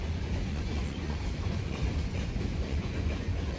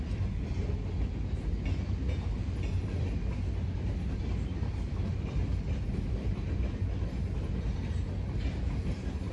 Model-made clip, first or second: first